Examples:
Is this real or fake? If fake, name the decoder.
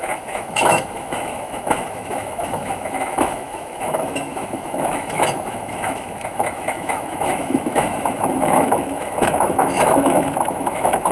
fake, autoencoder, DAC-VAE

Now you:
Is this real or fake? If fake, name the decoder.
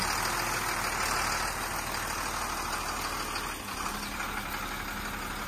real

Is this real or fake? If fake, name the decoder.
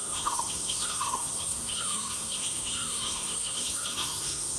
fake, codec, SNAC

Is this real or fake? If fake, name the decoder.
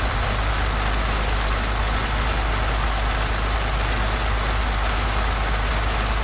real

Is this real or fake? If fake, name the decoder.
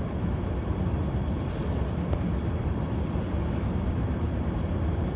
fake, vocoder, BigVGAN v2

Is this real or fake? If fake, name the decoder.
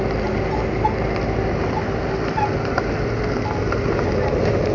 real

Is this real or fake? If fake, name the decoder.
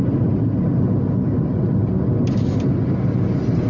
real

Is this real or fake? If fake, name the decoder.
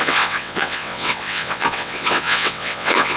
fake, vocoder, WaveNeXt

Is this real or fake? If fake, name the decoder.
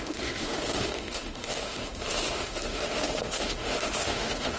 fake, autoencoder, DAC-VAE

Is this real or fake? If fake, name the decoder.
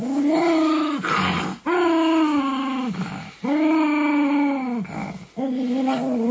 real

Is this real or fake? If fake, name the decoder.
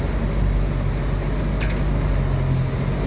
real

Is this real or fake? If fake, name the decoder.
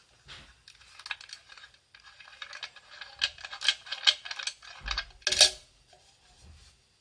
real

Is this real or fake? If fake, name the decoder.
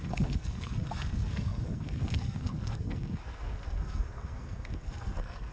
fake, codec, SNAC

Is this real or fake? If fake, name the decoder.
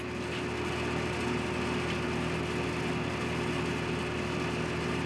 real